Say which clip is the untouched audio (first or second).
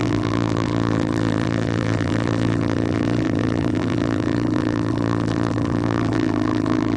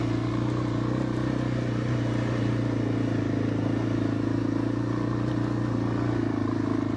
second